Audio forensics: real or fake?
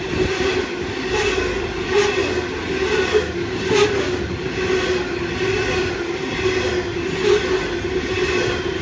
real